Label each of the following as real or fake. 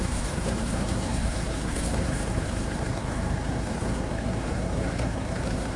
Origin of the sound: fake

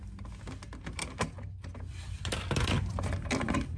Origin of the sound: real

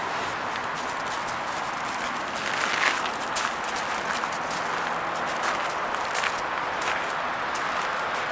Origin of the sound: real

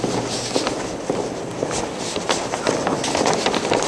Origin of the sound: real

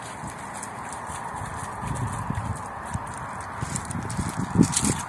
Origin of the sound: real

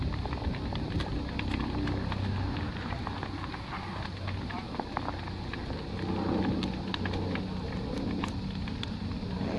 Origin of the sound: real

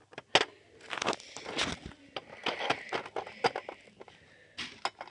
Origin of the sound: real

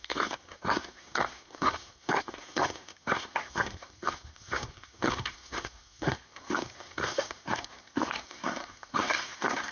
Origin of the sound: fake